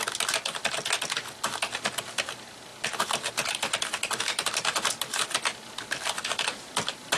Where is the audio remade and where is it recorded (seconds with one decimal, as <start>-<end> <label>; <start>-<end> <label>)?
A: 0.0-7.2 recorded